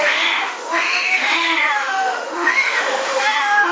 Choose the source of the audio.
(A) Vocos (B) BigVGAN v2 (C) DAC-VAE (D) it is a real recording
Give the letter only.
C